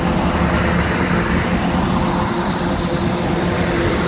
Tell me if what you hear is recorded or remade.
recorded